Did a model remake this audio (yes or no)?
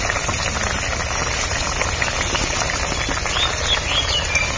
no